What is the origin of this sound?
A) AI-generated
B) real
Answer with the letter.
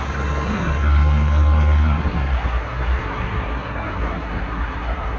A